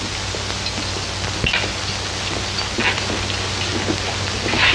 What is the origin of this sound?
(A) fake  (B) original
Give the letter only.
B